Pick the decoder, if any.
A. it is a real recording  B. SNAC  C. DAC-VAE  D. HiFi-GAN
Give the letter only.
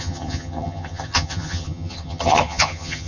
D